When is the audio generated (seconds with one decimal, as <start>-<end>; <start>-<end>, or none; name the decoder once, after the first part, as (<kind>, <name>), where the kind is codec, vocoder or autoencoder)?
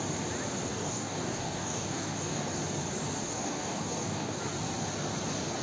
0.7-2.6 (codec, DAC); 3.2-4.4